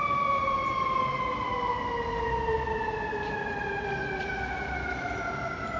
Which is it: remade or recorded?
recorded